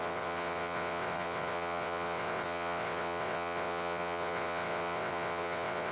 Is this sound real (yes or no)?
no